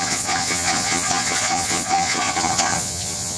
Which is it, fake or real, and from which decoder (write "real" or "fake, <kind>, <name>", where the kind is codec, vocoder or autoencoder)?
fake, vocoder, Vocos